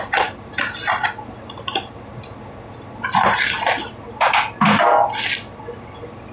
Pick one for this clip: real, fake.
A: real